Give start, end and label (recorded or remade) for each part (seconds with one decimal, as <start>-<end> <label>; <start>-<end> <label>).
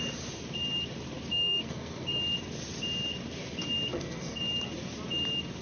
0.0-1.3 recorded; 1.3-2.2 remade; 2.2-3.9 recorded; 3.9-4.4 remade; 4.4-5.6 recorded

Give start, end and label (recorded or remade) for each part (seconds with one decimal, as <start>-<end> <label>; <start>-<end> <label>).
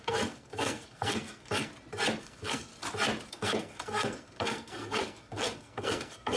0.0-1.7 remade; 1.7-2.2 recorded; 2.2-2.7 remade; 2.7-3.3 recorded; 3.3-6.4 remade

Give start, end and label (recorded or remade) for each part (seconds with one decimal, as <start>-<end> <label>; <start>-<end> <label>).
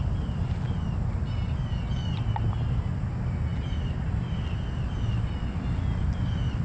0.0-6.6 recorded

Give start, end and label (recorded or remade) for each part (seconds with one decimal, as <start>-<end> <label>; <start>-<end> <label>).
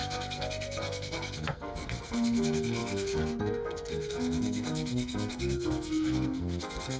0.0-7.0 remade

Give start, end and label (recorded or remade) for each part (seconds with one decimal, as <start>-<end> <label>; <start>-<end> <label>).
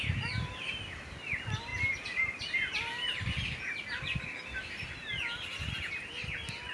0.0-6.7 recorded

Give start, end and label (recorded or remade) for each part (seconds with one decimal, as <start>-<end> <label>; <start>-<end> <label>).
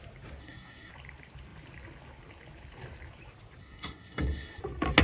0.0-0.4 recorded; 0.4-0.9 remade; 0.9-3.6 recorded; 3.6-4.6 remade; 4.6-5.0 recorded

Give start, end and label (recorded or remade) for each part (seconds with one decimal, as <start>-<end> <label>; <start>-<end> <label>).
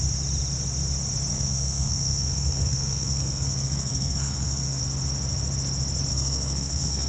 0.0-1.3 recorded; 1.3-4.8 remade; 4.8-6.1 recorded; 6.1-7.1 remade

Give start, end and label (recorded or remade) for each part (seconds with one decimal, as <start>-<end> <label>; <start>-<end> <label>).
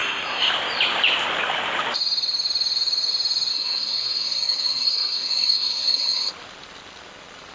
0.0-0.5 remade; 0.5-3.5 recorded; 3.5-6.3 remade; 6.3-7.5 recorded